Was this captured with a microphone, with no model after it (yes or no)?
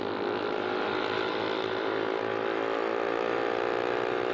yes